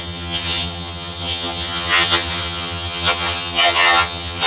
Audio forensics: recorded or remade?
remade